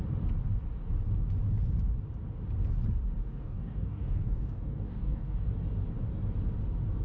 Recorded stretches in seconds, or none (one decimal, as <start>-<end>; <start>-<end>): 0.0-3.2; 5.5-7.0